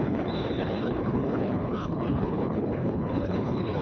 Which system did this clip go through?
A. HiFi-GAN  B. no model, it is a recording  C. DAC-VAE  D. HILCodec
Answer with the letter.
D